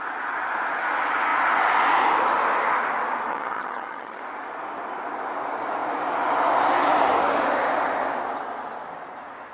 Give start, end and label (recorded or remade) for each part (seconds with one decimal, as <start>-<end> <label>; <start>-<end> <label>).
0.0-3.3 recorded; 3.3-4.2 remade; 4.2-9.5 recorded